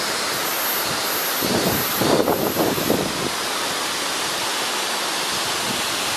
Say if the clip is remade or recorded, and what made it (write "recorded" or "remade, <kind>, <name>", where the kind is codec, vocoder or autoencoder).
recorded